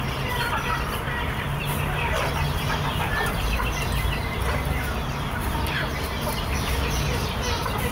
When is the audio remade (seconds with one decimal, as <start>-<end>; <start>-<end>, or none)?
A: none